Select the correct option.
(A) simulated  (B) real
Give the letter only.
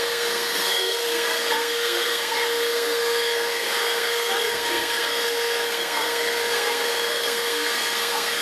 A